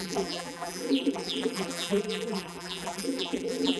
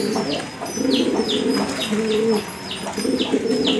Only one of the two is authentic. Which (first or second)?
second